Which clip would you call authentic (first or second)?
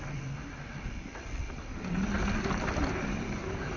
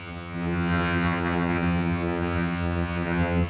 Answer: first